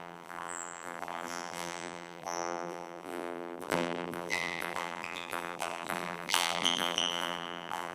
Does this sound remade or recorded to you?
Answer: remade